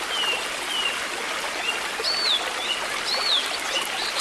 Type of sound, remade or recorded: recorded